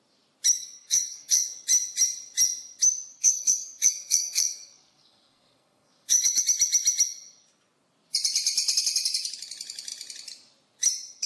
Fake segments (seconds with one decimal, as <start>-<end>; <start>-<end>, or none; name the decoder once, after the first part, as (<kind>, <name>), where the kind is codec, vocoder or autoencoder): 0.6-1.5 (codec, SNAC); 3.1-6.4